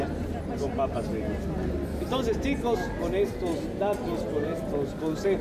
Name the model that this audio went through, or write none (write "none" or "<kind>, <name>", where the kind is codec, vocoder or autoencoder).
none